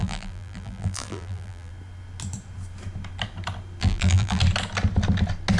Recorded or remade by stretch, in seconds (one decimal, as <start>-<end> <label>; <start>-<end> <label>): 0.0-1.7 remade; 1.7-3.8 recorded; 3.8-4.4 remade; 4.4-5.6 recorded